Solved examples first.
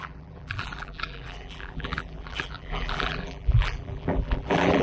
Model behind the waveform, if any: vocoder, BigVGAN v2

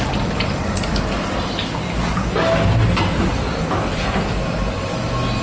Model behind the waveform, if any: none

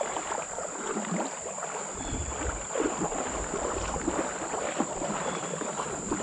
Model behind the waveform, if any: none